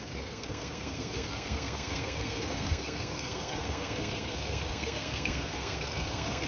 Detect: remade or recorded remade